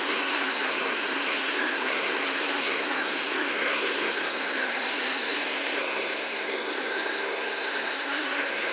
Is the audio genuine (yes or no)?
no